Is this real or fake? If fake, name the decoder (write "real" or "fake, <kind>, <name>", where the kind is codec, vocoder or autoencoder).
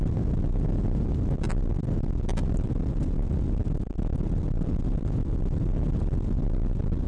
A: real